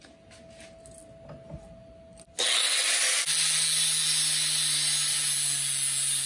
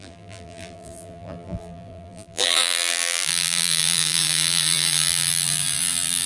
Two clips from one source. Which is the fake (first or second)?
second